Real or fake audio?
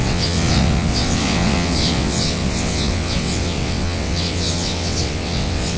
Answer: fake